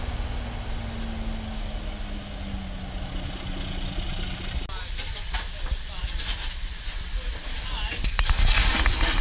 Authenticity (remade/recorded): recorded